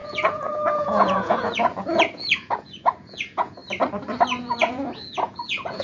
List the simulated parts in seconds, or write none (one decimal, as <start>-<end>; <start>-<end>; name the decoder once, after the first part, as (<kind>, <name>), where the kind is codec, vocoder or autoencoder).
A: 0.0-3.6 (vocoder, Vocos); 4.4-5.8

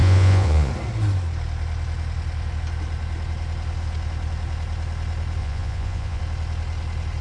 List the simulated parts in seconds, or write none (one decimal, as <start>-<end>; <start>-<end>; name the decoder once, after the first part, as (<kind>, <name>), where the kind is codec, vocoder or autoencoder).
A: 0.0-0.7 (vocoder, Vocos); 5.4-6.2

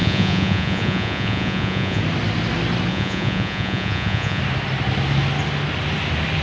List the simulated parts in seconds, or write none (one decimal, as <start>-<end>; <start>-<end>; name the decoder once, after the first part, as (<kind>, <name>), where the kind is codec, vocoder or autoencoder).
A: 0.0-2.0 (vocoder, Vocos); 2.9-4.4

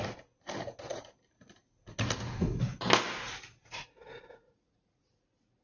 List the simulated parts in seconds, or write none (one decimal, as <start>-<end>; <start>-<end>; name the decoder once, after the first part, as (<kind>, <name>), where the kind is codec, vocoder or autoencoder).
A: 3.6-5.1 (vocoder, Vocos)

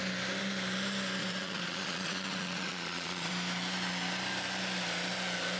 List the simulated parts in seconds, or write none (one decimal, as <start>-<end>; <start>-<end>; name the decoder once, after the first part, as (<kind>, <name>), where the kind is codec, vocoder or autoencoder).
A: 1.2-3.3 (vocoder, Vocos)

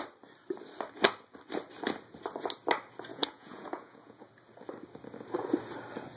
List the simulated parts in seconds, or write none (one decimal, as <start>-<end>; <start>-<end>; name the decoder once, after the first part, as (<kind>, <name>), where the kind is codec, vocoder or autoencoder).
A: 3.1-4.3 (vocoder, Vocos)